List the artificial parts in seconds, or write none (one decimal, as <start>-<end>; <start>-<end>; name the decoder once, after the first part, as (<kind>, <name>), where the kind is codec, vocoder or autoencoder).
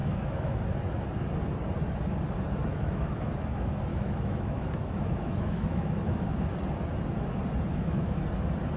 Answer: 0.0-0.6 (autoencoder, DAC-VAE); 2.7-3.3; 3.9-6.5; 7.7-8.2